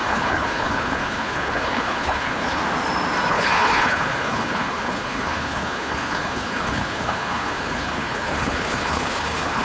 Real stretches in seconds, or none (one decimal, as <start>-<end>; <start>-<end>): 2.6-3.3

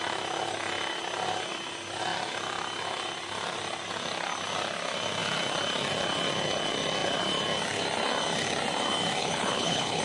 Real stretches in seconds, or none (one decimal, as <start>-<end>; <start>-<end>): 0.0-9.2